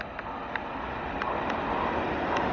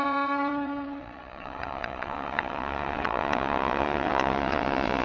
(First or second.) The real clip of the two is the first